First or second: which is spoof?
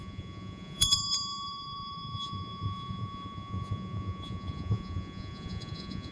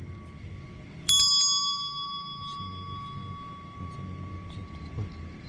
first